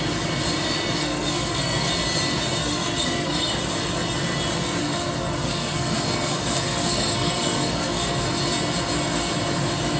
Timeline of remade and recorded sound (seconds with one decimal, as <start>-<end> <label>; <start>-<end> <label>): 0.0-1.0 recorded; 1.0-1.9 remade; 1.9-2.6 recorded; 2.6-3.6 remade; 3.6-4.8 recorded; 4.8-8.3 remade; 8.3-10.0 recorded